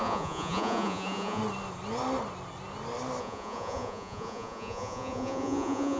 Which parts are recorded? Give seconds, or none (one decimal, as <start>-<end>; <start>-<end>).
1.4-3.2